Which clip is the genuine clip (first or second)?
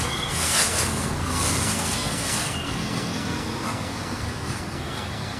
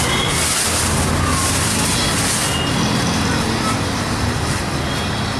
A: second